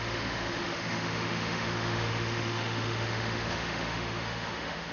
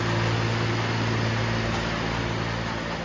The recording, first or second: second